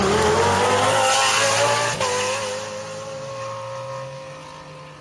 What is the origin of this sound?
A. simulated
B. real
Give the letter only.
B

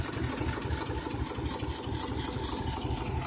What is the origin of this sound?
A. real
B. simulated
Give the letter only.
A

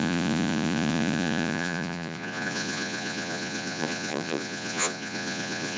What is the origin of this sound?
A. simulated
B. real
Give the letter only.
A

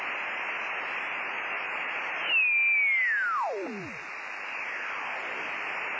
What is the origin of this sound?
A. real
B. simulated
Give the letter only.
A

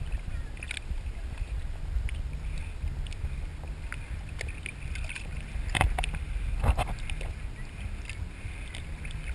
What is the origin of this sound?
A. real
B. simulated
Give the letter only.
A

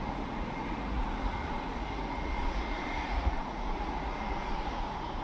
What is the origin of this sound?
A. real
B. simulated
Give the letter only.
B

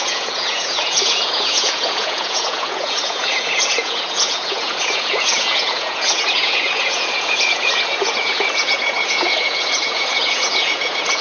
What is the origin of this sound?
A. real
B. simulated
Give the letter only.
B